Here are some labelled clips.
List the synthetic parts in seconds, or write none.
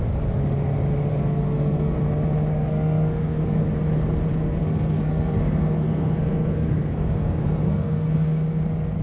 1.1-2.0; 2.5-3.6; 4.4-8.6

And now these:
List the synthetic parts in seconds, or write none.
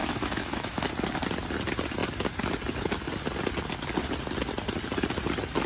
0.0-0.9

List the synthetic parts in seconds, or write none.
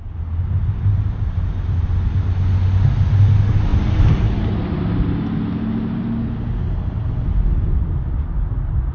3.7-4.5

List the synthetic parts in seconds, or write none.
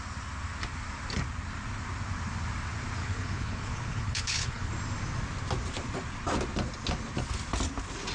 3.0-4.7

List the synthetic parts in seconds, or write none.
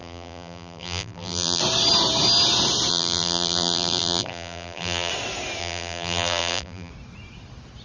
0.0-1.6; 2.9-5.1; 5.6-6.9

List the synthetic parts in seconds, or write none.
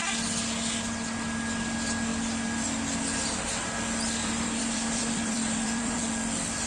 4.2-6.0